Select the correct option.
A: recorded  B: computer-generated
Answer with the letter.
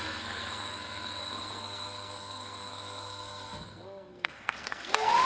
B